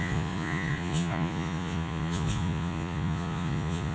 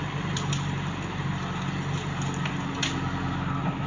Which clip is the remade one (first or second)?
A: first